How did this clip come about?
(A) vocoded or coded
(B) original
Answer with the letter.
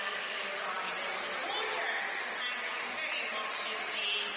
B